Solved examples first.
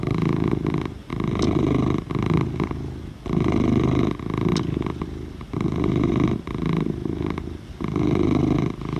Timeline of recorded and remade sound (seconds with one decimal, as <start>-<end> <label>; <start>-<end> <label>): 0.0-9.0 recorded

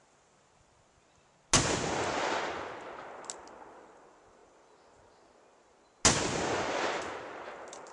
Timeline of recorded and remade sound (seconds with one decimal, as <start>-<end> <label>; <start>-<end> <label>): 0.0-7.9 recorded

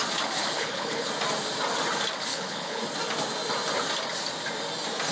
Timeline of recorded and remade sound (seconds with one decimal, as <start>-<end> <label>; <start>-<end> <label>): 0.0-0.4 recorded; 0.4-1.1 remade; 1.1-2.3 recorded; 2.3-2.8 remade; 2.8-5.1 recorded